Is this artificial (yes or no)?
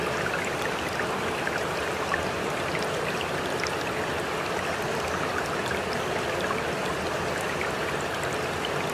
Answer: no